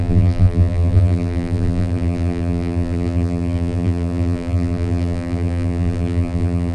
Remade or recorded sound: remade